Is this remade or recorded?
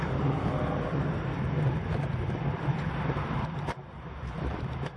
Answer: recorded